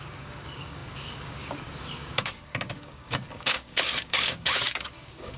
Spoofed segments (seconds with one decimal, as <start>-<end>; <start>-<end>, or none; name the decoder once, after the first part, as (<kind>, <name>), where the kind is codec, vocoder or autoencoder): 0.0-5.4 (codec, DAC)